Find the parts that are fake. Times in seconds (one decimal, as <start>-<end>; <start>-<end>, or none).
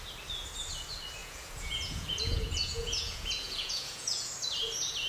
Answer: 1.2-4.3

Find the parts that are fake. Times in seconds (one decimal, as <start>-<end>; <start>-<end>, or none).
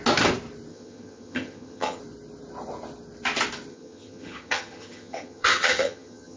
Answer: 0.7-2.0; 3.7-6.4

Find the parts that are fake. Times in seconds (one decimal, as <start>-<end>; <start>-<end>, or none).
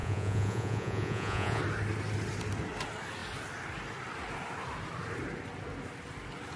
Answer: 0.0-1.6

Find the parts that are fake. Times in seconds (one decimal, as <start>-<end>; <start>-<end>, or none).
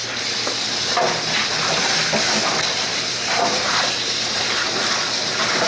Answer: 2.9-4.4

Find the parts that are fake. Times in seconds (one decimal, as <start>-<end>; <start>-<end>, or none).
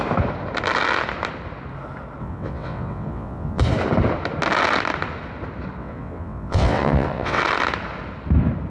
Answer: 2.2-3.6; 5.8-7.4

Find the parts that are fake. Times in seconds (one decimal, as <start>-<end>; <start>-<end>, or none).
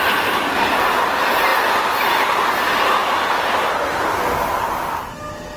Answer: 1.5-2.1; 3.0-3.7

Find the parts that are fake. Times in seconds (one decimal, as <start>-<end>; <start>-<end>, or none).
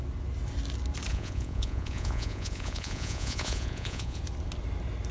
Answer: 1.1-4.2